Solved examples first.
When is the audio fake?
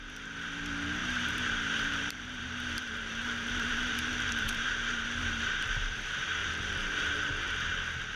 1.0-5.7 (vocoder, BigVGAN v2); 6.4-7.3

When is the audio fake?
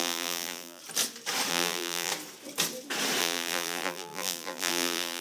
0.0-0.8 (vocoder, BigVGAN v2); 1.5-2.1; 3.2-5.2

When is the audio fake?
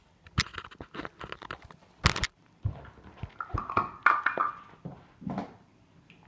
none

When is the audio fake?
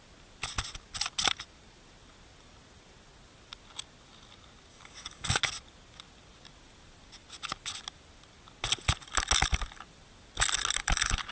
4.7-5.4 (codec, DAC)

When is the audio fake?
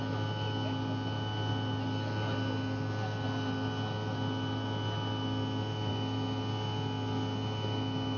none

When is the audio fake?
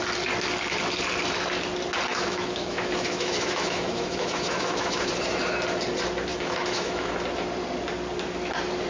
2.1-5.1 (autoencoder, DAC-VAE); 6.3-7.1